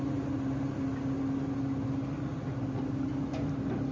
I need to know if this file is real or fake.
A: real